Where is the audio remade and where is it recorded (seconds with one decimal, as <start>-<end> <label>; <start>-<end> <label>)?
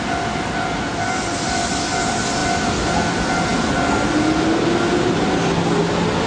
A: 0.0-6.3 recorded